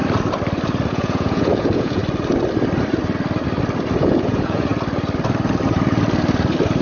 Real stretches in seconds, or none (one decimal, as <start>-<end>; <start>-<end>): 0.0-0.9; 2.0-4.0; 4.7-6.8